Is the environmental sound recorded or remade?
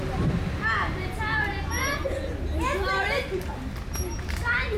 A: recorded